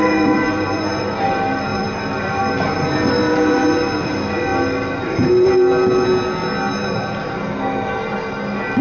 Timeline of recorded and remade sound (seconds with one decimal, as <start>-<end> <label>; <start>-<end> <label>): 0.0-1.7 recorded; 1.7-2.4 remade; 2.4-4.5 recorded; 4.5-5.5 remade; 5.5-8.8 recorded